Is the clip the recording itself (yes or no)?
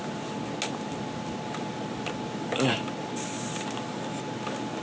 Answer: yes